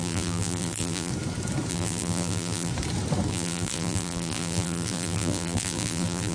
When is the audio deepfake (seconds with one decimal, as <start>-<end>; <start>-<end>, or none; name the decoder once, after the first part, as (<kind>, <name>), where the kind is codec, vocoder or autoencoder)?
0.0-1.1 (vocoder, BigVGAN v2); 1.7-2.7; 3.3-6.3